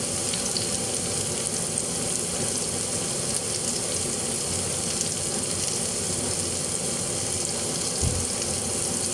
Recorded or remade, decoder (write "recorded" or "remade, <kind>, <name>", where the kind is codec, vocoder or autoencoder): recorded